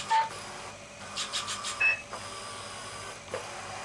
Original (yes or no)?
no